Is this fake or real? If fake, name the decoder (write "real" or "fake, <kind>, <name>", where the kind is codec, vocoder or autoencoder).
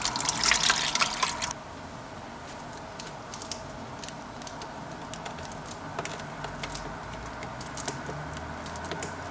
real